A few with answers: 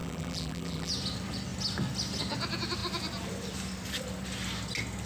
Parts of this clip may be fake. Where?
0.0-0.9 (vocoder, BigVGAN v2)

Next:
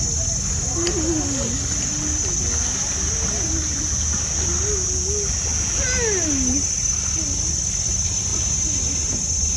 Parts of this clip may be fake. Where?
none

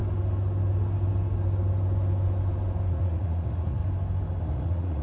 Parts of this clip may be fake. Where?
2.9-3.8 (vocoder, Vocos); 4.4-5.0